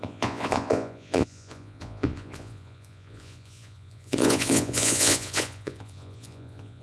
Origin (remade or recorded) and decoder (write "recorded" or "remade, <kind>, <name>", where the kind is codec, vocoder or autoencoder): remade, vocoder, Vocos